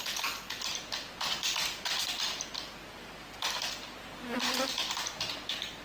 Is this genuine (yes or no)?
yes